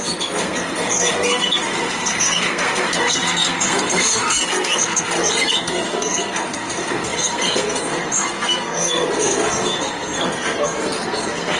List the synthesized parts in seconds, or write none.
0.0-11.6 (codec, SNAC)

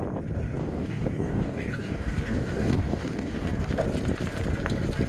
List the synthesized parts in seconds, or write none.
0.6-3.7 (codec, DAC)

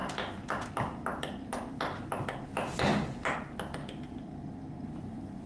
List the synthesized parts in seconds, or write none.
0.0-0.7 (vocoder, BigVGAN v2); 1.1-1.6; 2.9-4.5

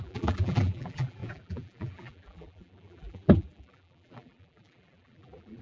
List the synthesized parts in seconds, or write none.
0.0-5.6 (vocoder, BigVGAN v2)